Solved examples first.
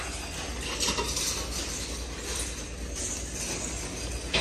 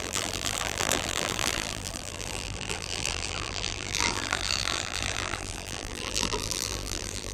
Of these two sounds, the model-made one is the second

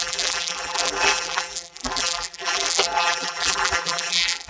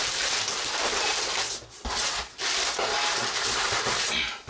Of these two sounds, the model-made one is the first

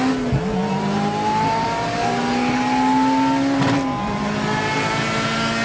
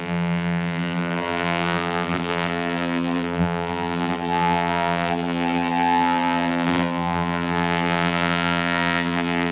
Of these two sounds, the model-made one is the second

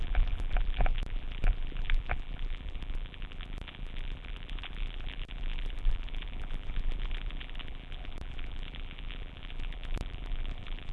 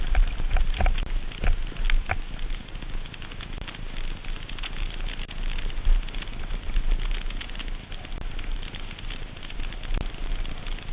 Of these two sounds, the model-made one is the first